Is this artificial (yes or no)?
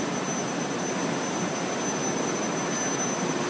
no